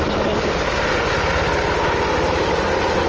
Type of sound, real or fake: real